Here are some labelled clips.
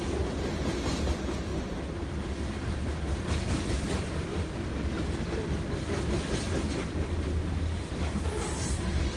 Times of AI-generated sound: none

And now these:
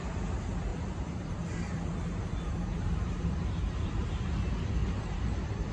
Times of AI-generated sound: 0.7-4.1; 4.8-5.7

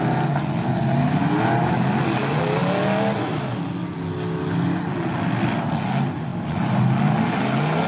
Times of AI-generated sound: none

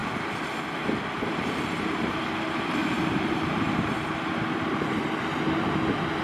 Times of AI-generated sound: 2.8-4.0